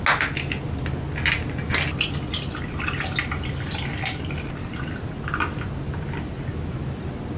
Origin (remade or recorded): recorded